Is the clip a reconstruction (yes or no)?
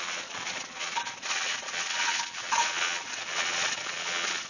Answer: yes